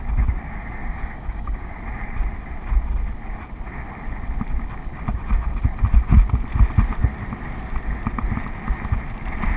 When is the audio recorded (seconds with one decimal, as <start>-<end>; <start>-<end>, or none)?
0.0-0.8; 1.7-9.6